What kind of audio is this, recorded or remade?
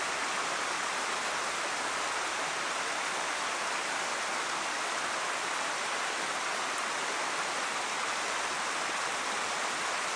recorded